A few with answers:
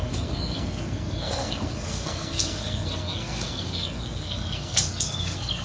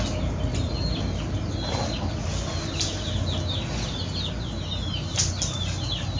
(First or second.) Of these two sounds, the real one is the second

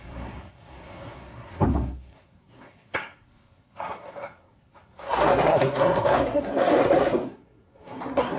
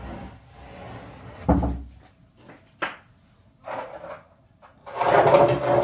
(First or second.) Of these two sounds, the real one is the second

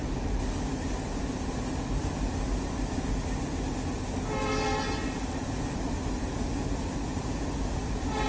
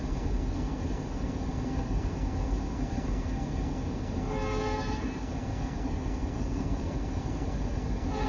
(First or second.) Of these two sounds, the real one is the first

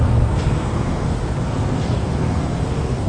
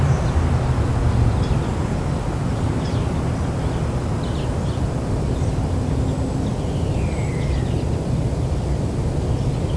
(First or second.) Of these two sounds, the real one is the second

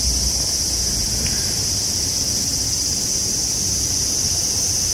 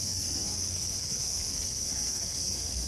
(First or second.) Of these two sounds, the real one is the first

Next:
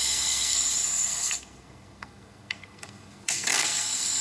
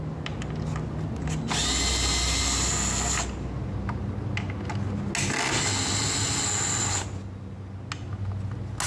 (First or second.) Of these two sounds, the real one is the second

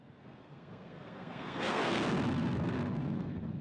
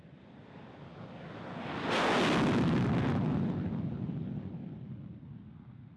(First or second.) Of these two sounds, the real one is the second